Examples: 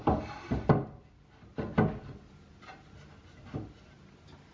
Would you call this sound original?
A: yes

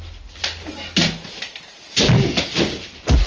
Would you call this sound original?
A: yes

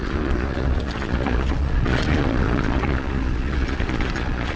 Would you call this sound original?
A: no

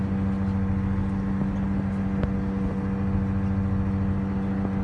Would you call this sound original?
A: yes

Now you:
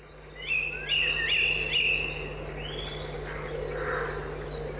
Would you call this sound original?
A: yes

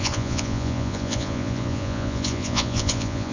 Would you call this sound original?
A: no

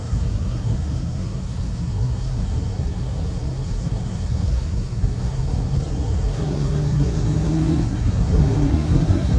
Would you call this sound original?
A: no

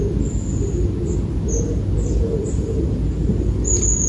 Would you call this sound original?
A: yes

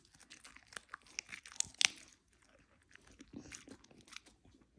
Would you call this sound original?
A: yes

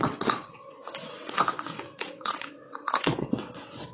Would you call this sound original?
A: no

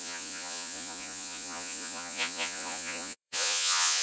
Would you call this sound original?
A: no